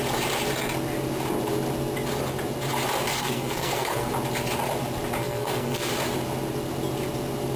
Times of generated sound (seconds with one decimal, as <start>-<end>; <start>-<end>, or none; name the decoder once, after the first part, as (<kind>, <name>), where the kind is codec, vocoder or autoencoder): 3.1-4.1 (codec, SNAC); 5.2-5.9